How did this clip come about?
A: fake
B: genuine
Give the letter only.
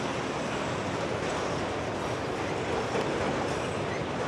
B